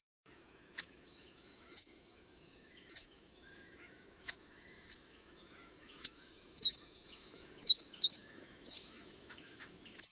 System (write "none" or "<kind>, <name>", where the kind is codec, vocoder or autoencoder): autoencoder, DAC-VAE